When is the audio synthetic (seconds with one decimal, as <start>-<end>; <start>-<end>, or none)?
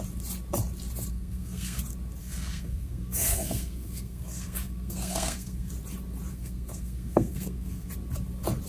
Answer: 1.1-1.8; 2.2-5.7; 6.3-7.9